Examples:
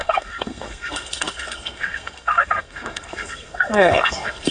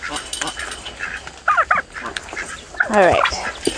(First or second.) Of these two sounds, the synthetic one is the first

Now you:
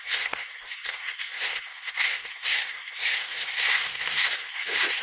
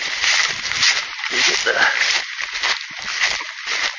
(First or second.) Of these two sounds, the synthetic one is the first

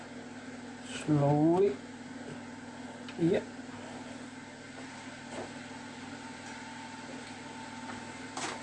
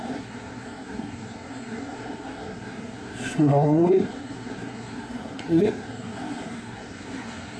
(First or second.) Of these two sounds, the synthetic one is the second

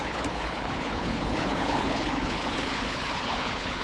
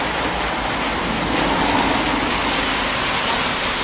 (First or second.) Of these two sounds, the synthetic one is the first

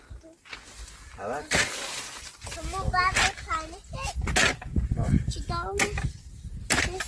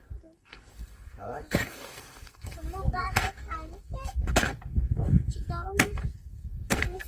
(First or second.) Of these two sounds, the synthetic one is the second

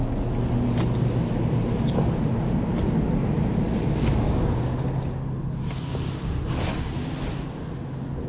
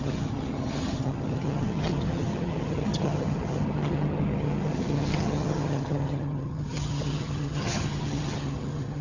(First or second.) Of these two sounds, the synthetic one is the second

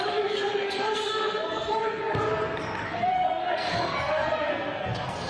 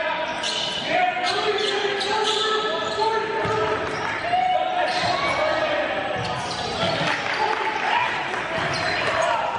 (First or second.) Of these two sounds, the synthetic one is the first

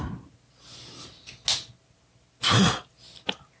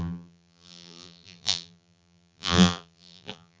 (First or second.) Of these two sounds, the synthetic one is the second